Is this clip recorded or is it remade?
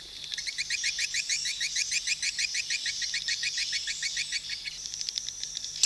recorded